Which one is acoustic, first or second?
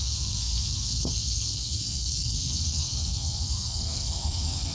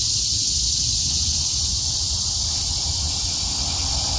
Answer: second